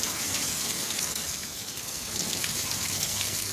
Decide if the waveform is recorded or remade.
remade